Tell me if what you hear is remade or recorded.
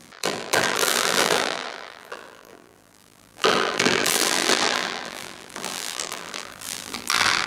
remade